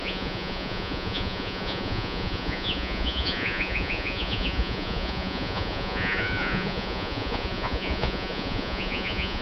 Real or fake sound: fake